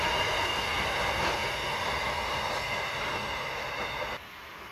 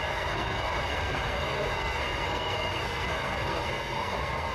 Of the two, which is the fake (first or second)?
second